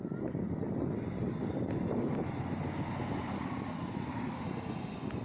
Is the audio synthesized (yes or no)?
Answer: no